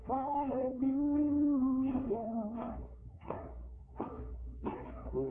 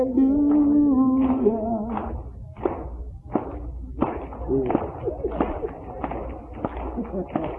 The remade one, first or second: first